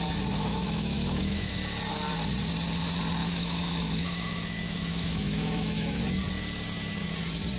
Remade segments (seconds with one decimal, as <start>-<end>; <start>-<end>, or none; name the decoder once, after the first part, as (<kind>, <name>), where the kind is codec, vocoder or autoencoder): 0.5-1.5 (autoencoder, DAC-VAE); 3.2-6.0